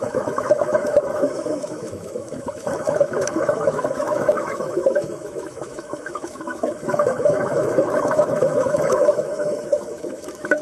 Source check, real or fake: fake